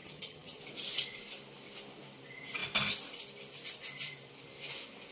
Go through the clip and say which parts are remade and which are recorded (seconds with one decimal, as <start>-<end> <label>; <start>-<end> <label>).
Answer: 0.0-0.6 remade; 0.6-5.1 recorded